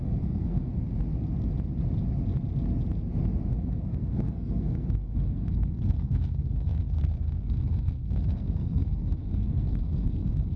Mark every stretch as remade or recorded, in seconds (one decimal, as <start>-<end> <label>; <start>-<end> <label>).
0.0-0.7 remade; 0.7-3.5 recorded; 3.5-10.6 remade

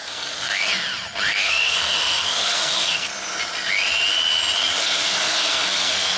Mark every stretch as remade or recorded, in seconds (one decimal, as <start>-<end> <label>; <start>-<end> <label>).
0.0-0.6 remade; 0.6-1.3 recorded; 1.3-3.1 remade; 3.1-4.8 recorded; 4.8-6.2 remade

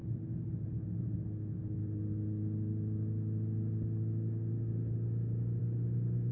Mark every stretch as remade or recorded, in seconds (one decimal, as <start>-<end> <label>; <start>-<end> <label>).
0.0-6.3 recorded

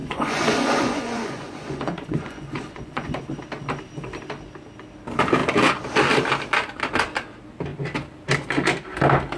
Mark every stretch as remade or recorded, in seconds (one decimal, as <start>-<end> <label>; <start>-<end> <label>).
0.0-3.2 remade; 3.2-9.4 recorded

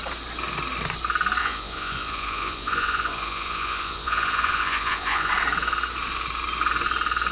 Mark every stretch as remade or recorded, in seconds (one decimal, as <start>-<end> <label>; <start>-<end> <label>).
0.0-1.4 recorded; 1.4-5.3 remade; 5.3-7.3 recorded

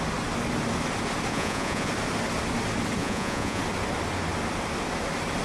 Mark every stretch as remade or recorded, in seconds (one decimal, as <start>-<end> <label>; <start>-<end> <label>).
0.0-1.3 recorded; 1.3-1.9 remade; 1.9-3.0 recorded; 3.0-3.6 remade; 3.6-5.4 recorded

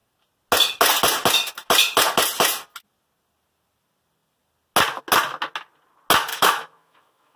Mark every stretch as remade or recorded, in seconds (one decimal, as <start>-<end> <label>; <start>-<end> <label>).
0.0-6.3 recorded; 6.3-7.4 remade

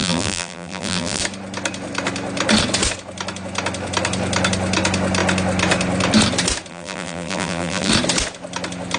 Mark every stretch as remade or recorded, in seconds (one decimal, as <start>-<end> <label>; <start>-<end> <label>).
0.0-1.2 remade; 1.2-6.7 recorded; 6.7-7.9 remade; 7.9-9.0 recorded